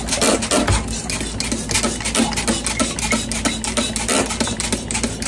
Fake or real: real